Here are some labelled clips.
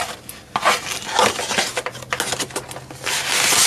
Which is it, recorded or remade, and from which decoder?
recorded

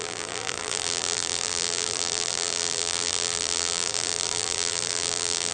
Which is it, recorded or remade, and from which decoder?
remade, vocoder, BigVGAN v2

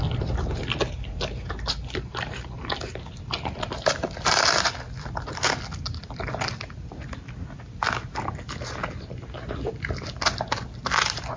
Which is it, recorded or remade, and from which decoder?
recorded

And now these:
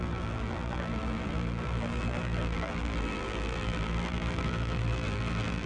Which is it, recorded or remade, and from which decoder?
remade, vocoder, BigVGAN v2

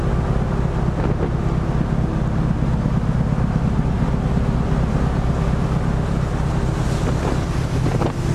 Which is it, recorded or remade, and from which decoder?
recorded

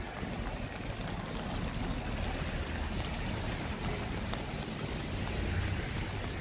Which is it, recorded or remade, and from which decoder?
recorded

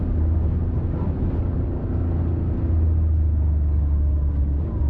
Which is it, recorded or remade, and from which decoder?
recorded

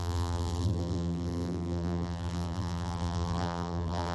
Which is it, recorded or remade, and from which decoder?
remade, vocoder, BigVGAN v2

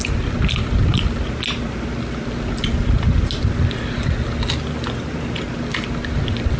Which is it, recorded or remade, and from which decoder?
recorded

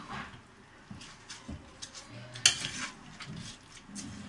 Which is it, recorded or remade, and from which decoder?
recorded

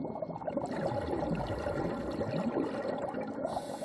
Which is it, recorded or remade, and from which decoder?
recorded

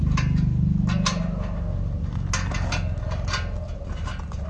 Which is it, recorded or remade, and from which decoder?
recorded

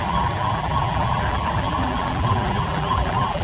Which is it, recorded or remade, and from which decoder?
remade, vocoder, BigVGAN v2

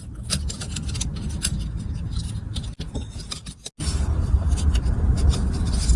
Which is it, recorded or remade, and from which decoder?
recorded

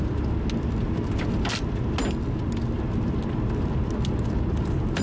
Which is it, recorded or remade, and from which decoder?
recorded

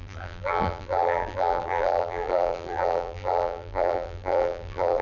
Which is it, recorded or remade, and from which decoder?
remade, vocoder, BigVGAN v2